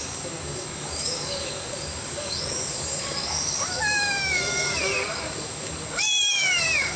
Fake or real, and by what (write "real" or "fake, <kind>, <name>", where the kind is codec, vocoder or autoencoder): fake, codec, DAC